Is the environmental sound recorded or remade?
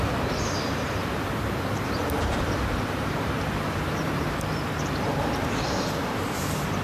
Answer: remade